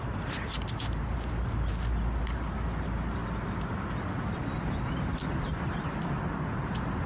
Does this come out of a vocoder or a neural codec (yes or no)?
no